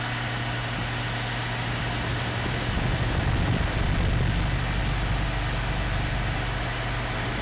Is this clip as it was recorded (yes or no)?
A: yes